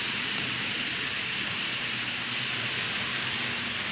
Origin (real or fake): real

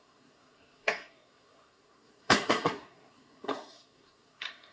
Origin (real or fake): fake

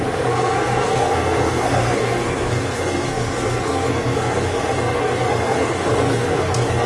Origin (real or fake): fake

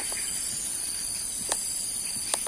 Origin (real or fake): real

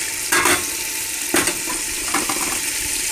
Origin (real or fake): real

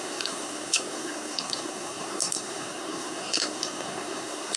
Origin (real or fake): fake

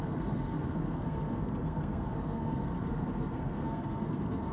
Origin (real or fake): fake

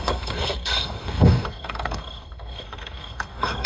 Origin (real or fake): fake